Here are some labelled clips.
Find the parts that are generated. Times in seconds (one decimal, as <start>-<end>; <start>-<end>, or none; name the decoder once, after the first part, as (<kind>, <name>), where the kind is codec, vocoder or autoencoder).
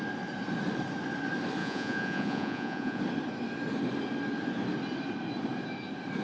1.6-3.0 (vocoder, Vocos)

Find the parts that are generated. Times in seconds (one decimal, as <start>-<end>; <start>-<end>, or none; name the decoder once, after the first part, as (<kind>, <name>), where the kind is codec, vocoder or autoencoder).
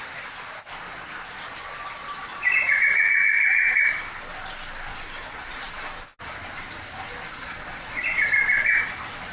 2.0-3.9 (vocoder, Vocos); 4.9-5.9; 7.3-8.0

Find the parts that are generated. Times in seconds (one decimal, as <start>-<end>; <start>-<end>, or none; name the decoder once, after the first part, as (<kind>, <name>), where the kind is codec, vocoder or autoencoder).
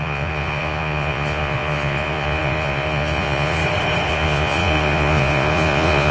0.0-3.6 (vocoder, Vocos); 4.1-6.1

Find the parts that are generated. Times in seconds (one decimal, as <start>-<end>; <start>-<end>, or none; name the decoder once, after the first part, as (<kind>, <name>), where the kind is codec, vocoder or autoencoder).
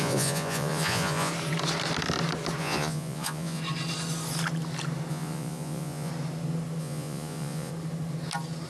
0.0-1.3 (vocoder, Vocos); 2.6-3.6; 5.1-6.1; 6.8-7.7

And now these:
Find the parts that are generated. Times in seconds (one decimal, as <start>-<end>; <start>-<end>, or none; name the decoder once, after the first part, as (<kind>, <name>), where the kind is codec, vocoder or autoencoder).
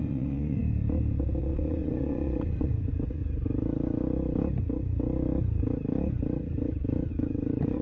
0.0-0.6 (vocoder, Vocos); 1.4-3.2; 7.1-7.8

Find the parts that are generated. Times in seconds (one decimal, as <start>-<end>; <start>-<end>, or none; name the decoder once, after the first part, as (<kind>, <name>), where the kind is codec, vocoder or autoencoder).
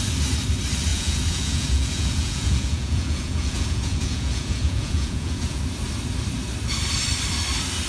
0.9-5.6 (vocoder, Vocos)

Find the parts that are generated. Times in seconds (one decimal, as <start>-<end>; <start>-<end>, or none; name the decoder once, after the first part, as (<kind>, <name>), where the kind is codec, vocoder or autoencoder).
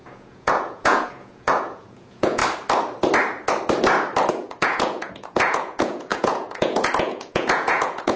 0.0-2.4 (vocoder, Vocos); 4.3-8.2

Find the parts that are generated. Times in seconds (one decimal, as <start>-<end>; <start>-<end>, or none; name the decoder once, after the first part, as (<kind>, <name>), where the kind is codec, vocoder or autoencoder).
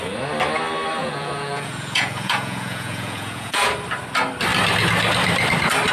1.0-3.7 (vocoder, Vocos)